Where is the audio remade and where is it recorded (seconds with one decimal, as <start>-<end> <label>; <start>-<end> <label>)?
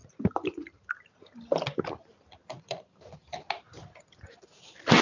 0.0-5.0 recorded